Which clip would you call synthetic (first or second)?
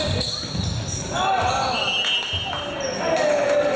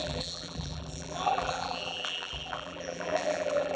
second